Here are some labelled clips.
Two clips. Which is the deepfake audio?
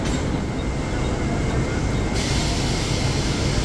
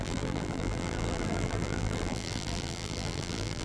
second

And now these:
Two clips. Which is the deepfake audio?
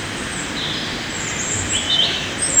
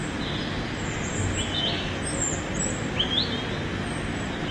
first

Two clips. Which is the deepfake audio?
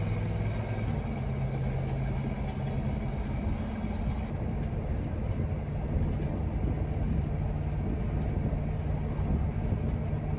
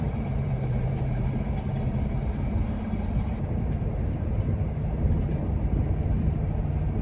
second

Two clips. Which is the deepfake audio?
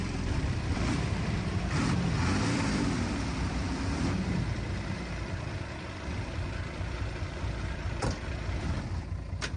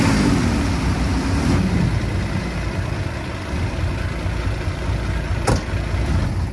first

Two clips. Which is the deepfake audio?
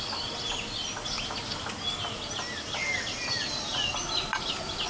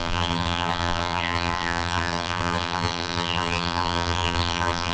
second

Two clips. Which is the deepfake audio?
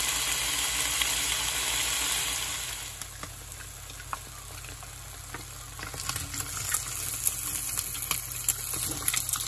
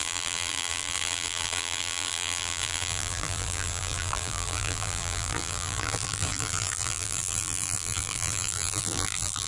second